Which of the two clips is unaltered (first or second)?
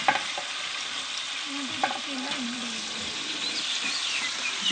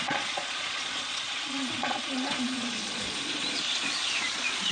first